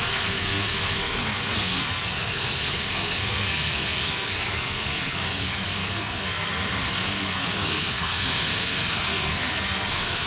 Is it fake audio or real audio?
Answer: fake